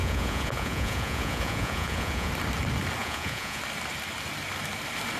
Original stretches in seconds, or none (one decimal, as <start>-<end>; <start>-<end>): 2.3-3.0; 3.6-5.2